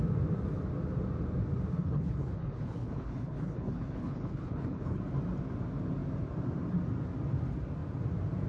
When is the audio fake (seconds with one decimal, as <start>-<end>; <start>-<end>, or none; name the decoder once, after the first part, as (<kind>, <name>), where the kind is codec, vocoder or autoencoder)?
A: 1.8-5.0 (codec, HILCodec)

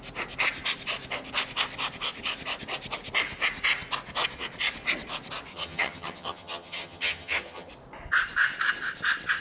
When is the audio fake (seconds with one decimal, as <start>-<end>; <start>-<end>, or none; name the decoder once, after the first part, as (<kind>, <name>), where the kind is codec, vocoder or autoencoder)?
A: 5.5-7.7 (vocoder, HiFi-GAN)

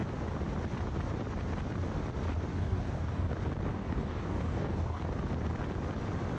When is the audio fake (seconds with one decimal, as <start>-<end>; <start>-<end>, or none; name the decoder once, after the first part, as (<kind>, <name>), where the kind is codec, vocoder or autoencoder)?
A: 2.5-3.3 (codec, DAC); 3.7-5.0

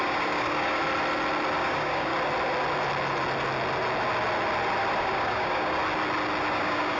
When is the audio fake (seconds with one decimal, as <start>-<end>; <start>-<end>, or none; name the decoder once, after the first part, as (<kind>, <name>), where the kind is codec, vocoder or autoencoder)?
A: 0.0-0.8 (codec, DAC); 1.6-2.1; 5.0-5.8; 6.5-7.0

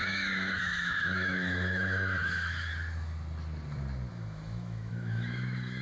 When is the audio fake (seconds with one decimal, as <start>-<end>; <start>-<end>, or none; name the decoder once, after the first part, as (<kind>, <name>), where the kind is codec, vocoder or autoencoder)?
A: 0.0-2.7 (autoencoder, DAC-VAE); 4.1-5.8

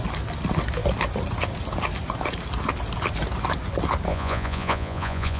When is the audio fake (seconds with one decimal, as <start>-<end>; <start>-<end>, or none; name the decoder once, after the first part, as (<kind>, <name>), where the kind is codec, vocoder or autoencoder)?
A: 4.1-5.4 (vocoder, Vocos)

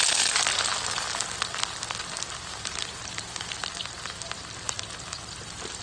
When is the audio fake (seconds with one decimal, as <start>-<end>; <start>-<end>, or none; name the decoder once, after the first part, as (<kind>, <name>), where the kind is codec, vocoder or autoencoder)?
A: none